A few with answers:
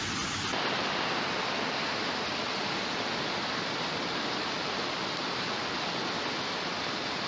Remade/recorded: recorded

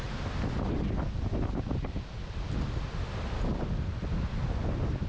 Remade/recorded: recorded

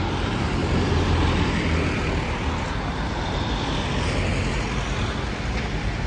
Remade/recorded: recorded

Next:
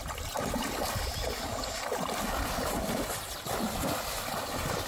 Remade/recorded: recorded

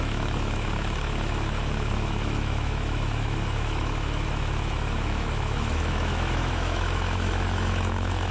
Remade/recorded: remade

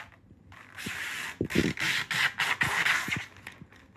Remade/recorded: recorded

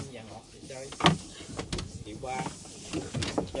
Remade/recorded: recorded